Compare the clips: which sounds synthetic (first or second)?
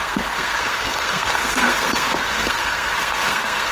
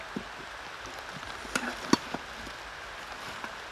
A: first